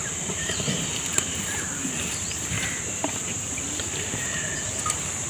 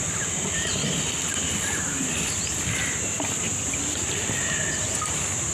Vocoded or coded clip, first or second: first